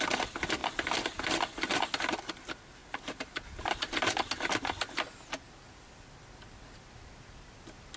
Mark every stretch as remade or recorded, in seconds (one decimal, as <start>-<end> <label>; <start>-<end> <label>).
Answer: 0.0-0.6 recorded; 0.6-1.3 remade; 1.3-8.0 recorded